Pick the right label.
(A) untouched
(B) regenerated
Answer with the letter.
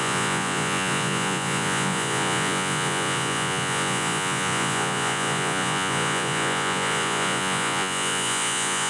B